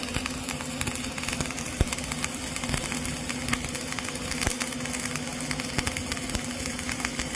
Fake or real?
real